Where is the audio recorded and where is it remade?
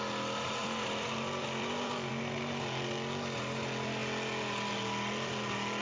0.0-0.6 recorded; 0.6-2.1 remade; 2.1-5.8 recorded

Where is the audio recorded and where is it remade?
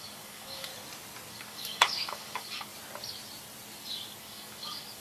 0.0-0.7 remade; 0.7-1.3 recorded; 1.3-2.7 remade; 2.7-4.2 recorded; 4.2-5.0 remade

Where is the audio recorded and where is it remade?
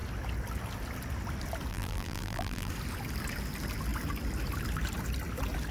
0.0-1.7 recorded; 1.7-2.7 remade; 2.7-5.7 recorded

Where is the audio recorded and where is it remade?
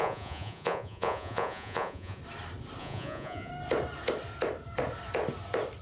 0.0-2.2 remade; 2.2-2.8 recorded; 2.8-3.5 remade; 3.5-5.8 recorded